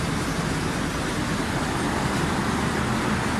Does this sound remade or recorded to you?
recorded